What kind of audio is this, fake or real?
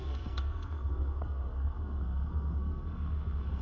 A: fake